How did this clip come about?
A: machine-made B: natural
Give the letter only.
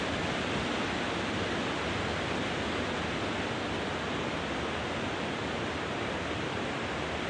B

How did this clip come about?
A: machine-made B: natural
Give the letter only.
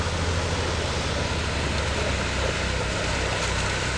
B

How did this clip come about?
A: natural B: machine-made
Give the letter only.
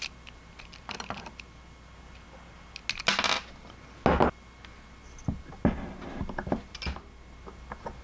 A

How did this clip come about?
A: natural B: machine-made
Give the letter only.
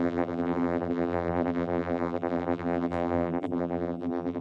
B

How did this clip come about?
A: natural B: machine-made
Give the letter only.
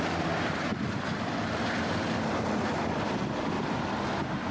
B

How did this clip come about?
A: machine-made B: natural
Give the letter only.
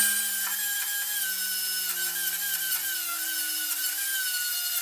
B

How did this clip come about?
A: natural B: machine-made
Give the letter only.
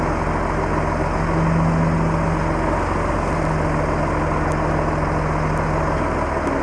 A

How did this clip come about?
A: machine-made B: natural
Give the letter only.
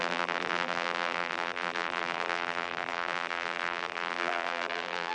A